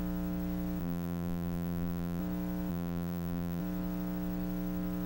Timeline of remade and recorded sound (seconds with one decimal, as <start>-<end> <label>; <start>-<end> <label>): 0.0-0.8 recorded; 0.8-2.2 remade; 2.2-2.7 recorded; 2.7-3.6 remade; 3.6-5.1 recorded